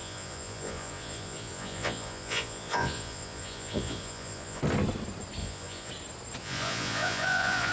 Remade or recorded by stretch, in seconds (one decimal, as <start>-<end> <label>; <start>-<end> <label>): 0.0-4.6 remade; 4.6-5.4 recorded; 5.4-5.9 remade; 5.9-6.4 recorded; 6.4-7.7 remade